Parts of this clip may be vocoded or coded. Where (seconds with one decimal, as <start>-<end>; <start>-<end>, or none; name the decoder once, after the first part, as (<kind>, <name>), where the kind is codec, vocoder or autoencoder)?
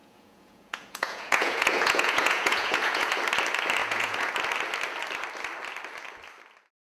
0.0-3.1 (vocoder, Vocos); 3.8-4.3